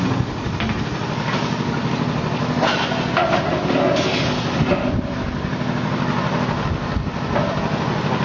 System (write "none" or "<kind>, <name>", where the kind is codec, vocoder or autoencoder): none